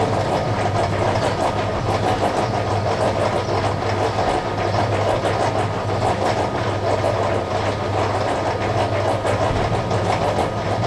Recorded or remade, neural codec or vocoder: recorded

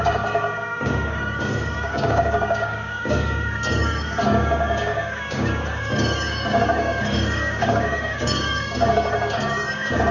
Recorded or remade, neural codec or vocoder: remade, codec, DAC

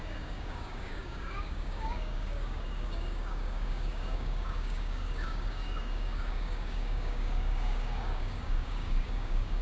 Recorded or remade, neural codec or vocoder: remade, codec, DAC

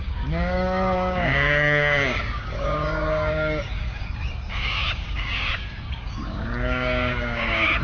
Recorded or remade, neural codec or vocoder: remade, codec, DAC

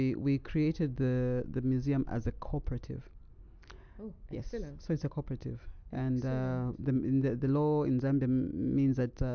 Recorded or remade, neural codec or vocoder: recorded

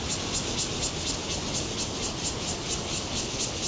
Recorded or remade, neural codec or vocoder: recorded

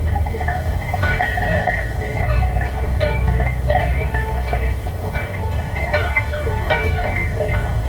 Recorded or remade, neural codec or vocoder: remade, codec, DAC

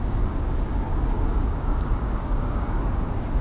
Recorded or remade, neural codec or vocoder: remade, codec, DAC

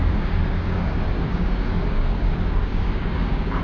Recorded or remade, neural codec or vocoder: remade, codec, DAC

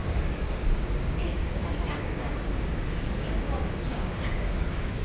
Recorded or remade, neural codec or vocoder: remade, codec, DAC